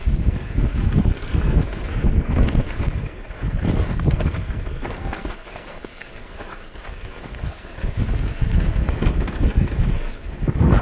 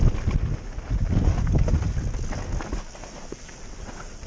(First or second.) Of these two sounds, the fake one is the first